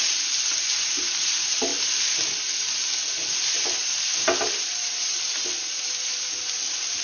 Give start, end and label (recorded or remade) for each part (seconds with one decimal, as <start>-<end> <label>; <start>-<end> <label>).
0.0-1.7 recorded; 1.7-5.2 remade; 5.2-7.0 recorded